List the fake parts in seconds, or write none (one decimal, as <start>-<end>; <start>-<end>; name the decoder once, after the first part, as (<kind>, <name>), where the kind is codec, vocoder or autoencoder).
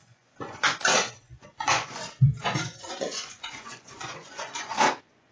0.0-5.3 (vocoder, Vocos)